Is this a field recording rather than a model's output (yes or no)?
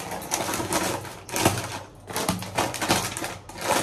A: yes